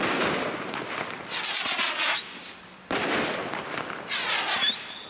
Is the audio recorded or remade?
recorded